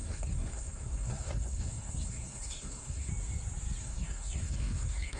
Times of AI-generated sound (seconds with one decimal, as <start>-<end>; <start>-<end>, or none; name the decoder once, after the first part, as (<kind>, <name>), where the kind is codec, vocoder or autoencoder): 0.0-3.1 (codec, SNAC); 3.8-5.2